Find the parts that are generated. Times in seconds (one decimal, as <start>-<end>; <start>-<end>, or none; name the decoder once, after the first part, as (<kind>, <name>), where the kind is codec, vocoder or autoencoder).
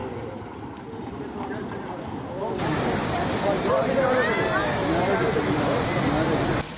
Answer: 0.0-4.1 (vocoder, BigVGAN v2); 5.2-5.9